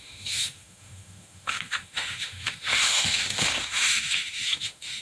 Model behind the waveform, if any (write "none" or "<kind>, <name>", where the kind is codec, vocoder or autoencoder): autoencoder, DAC-VAE